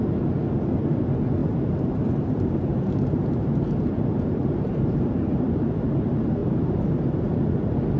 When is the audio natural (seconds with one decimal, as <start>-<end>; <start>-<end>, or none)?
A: 0.0-1.4; 6.0-6.4; 7.0-8.0